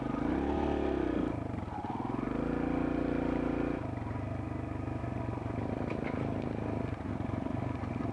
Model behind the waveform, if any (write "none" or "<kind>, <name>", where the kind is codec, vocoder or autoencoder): none